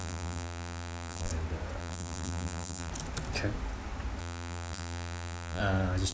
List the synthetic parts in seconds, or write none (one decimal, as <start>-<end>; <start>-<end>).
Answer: 0.0-1.3; 1.8-2.9; 4.2-5.6